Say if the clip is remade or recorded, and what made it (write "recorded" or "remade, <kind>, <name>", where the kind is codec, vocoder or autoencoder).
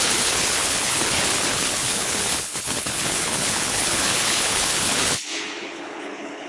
remade, codec, HILCodec